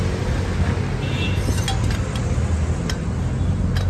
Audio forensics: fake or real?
real